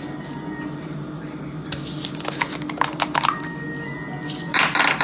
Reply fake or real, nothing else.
real